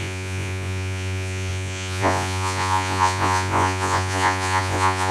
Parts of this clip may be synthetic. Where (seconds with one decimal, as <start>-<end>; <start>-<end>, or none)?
0.0-5.1